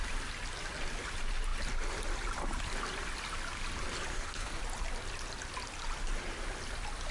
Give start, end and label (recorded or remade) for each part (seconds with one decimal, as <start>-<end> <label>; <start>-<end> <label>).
0.0-4.1 recorded; 4.1-4.6 remade; 4.6-7.1 recorded